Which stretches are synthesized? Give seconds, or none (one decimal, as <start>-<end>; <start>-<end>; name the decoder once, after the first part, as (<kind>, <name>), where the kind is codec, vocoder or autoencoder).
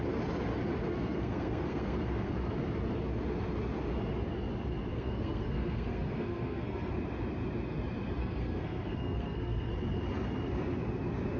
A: 0.9-2.3 (codec, SNAC); 4.9-6.9; 8.2-9.7